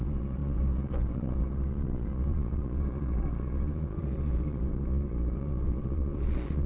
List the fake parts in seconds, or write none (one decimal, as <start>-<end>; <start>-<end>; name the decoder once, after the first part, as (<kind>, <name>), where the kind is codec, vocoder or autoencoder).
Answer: 0.0-6.7 (vocoder, Vocos)